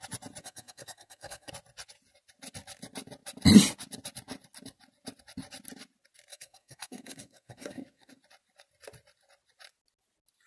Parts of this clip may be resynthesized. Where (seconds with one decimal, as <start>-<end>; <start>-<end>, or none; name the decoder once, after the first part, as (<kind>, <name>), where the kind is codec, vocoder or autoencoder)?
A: 0.4-1.5 (codec, SNAC); 6.3-8.2